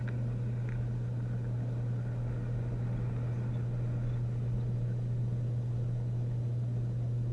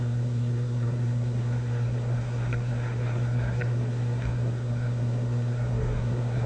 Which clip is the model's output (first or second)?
second